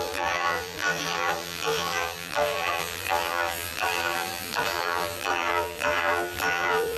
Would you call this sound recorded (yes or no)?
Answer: no